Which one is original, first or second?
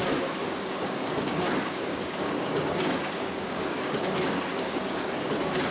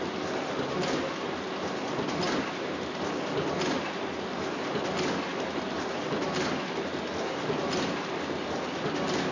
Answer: second